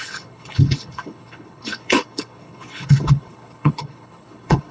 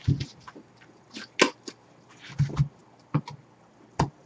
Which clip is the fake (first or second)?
first